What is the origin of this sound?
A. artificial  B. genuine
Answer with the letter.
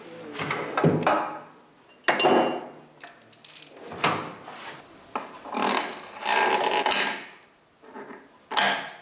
B